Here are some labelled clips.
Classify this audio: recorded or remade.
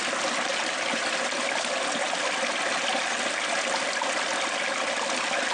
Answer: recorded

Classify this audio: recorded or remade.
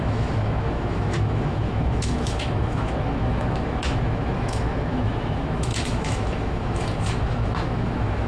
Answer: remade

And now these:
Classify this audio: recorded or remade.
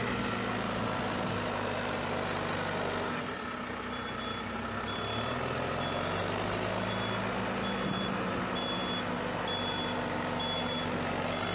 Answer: recorded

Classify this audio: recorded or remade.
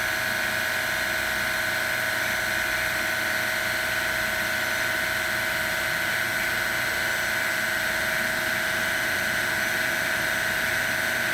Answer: recorded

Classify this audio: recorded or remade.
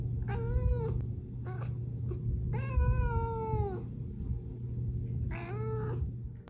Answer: recorded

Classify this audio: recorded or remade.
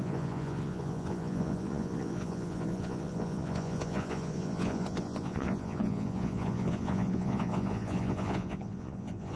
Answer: remade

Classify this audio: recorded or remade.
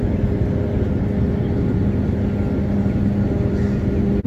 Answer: recorded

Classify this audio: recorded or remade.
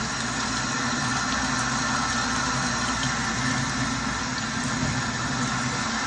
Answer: recorded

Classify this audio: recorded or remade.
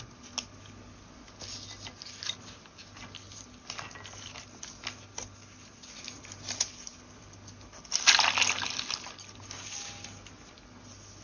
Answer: recorded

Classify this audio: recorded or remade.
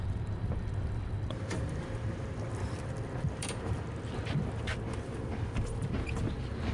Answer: remade